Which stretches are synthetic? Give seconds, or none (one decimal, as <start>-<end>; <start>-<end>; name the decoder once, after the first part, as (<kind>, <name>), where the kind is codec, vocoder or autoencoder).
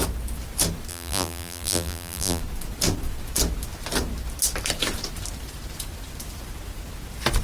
0.9-2.4 (vocoder, BigVGAN v2)